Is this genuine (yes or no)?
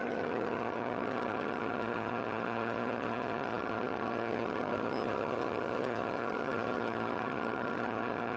no